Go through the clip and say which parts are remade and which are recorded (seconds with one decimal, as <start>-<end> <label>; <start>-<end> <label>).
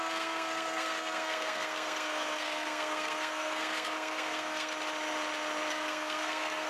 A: 0.0-4.7 remade; 4.7-5.7 recorded; 5.7-6.7 remade